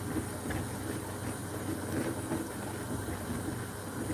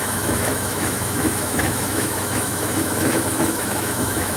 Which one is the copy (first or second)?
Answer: second